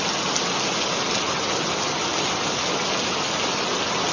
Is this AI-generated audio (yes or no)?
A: no